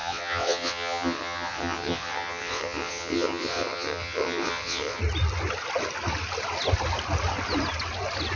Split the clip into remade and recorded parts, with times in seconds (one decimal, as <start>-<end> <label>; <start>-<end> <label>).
0.0-5.0 remade; 5.0-8.4 recorded